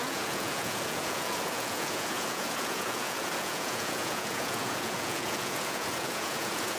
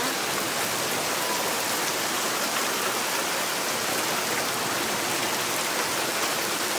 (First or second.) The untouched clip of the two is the second